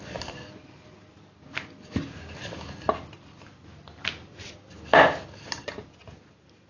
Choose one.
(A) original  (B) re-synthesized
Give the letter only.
A